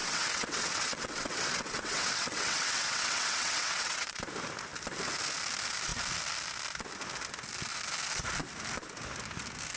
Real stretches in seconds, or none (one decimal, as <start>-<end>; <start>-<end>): 4.2-9.8